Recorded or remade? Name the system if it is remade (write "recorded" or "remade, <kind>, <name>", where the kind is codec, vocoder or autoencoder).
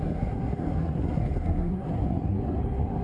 remade, codec, SNAC